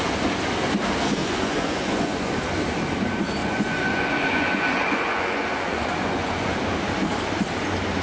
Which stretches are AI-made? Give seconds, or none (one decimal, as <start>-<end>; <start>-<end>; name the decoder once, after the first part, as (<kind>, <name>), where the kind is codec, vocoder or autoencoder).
1.2-2.3 (vocoder, Vocos); 3.4-6.6